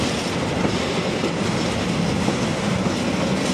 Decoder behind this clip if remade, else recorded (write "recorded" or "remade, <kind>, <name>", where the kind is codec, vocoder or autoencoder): recorded